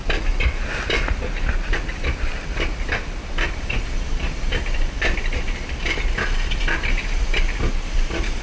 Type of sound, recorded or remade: remade